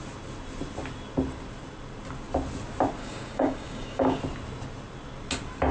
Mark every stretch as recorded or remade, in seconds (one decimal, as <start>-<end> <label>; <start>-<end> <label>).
0.0-3.0 recorded; 3.0-4.2 remade; 4.2-5.7 recorded